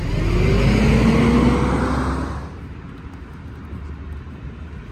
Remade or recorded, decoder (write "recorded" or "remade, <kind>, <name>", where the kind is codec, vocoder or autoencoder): recorded